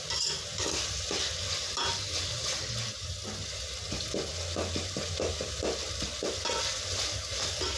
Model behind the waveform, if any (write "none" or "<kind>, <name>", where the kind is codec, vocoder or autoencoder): none